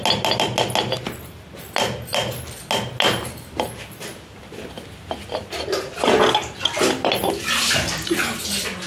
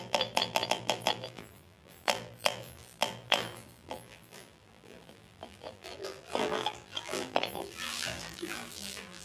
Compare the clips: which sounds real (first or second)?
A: first